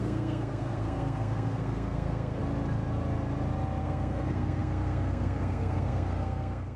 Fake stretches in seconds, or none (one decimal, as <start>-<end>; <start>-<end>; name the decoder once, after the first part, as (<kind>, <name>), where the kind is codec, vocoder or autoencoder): 0.0-2.4 (codec, SNAC); 3.8-6.8